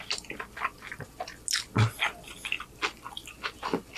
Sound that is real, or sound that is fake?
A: real